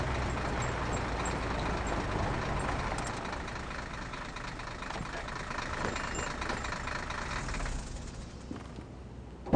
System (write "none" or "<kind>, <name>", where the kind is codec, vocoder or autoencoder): none